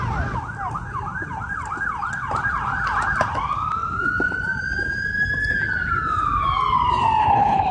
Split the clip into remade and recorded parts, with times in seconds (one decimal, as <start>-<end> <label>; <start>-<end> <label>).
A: 0.0-7.2 recorded; 7.2-7.7 remade